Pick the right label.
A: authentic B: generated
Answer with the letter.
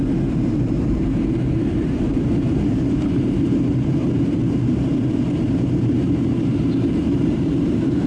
B